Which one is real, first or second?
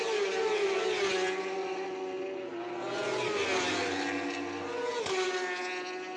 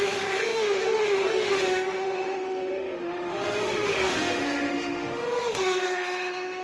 first